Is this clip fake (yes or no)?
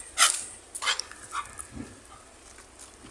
no